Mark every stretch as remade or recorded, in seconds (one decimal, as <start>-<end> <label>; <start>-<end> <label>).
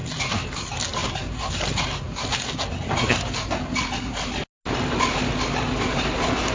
0.0-6.5 recorded